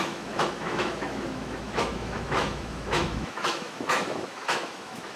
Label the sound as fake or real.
fake